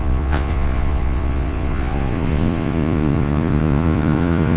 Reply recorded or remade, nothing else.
remade